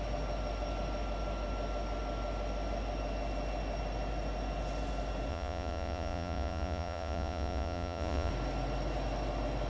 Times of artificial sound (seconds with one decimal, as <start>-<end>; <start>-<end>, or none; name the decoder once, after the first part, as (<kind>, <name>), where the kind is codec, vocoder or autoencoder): 5.3-8.3 (vocoder, Vocos)